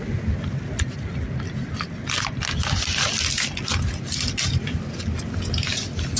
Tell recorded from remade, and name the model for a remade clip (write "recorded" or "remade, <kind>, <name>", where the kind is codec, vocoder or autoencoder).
recorded